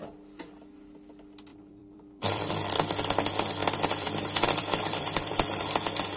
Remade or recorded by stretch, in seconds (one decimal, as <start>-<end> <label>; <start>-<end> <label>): 0.0-1.5 recorded; 1.5-2.5 remade; 2.5-3.6 recorded; 3.6-6.2 remade